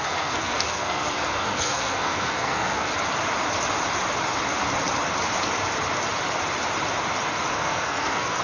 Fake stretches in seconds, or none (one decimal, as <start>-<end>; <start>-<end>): 0.0-2.9; 7.5-8.4